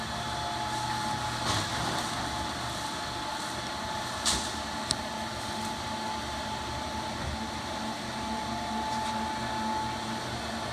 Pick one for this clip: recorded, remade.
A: recorded